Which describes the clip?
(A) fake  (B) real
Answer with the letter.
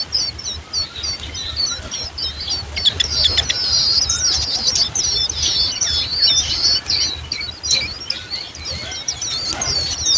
A